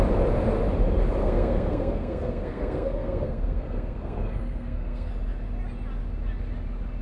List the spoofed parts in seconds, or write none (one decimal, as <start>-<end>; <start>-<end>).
1.2-5.1